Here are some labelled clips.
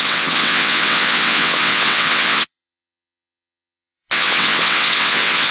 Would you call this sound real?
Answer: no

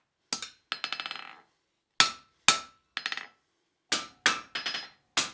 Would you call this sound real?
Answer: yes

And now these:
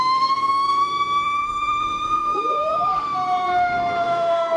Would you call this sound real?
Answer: no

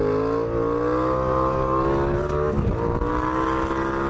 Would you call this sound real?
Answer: yes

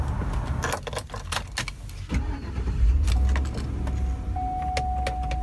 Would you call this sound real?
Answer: yes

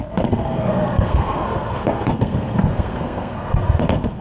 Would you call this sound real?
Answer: no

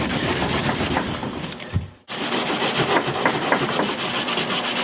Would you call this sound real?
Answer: no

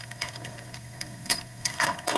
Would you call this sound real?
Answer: no